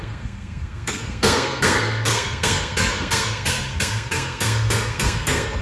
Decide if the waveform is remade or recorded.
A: remade